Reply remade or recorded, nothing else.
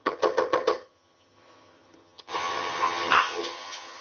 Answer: remade